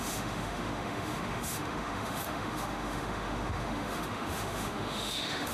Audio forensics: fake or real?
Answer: fake